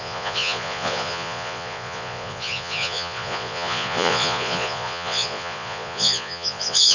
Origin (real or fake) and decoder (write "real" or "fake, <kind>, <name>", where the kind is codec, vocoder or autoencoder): fake, vocoder, Vocos